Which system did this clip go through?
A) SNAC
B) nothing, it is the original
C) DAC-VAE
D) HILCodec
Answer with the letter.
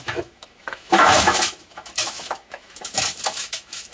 C